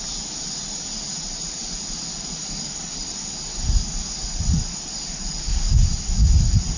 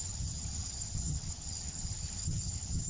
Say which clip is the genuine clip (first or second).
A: first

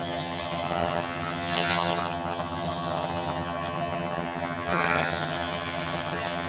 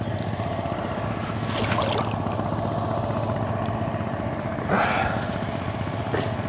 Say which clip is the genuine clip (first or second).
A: second